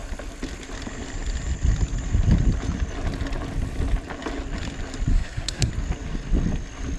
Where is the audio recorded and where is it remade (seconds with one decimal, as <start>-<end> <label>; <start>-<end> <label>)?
0.0-5.1 recorded; 5.1-5.7 remade; 5.7-7.0 recorded